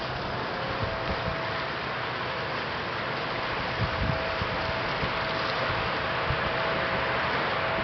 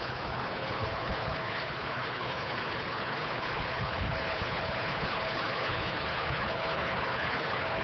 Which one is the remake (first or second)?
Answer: second